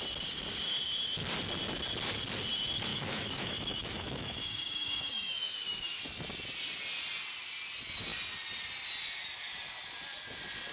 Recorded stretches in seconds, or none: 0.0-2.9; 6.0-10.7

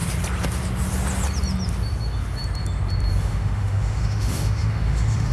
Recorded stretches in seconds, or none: 0.0-3.2

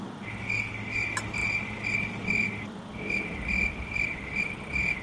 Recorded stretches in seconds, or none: 0.0-5.0

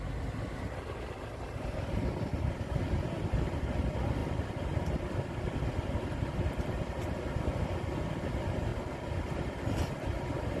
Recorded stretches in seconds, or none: 0.0-10.6

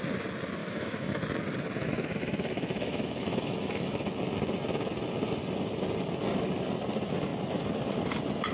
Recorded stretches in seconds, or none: 0.0-0.6; 1.2-1.8; 4.1-8.5

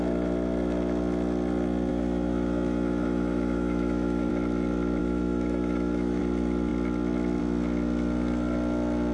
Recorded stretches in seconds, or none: 0.0-1.9; 4.3-5.0; 6.2-9.1